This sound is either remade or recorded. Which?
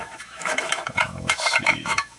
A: remade